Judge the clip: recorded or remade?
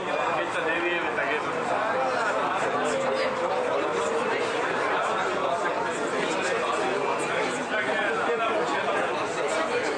recorded